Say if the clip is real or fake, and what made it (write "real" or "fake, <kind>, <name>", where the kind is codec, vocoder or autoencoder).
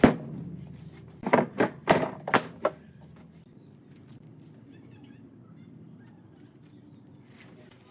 real